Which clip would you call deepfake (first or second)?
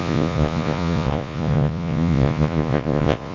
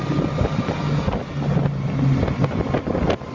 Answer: first